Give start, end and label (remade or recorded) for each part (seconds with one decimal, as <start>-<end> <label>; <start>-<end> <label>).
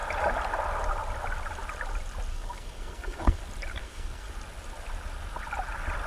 0.0-2.3 recorded; 2.3-3.4 remade; 3.4-3.8 recorded; 3.8-4.3 remade; 4.3-6.1 recorded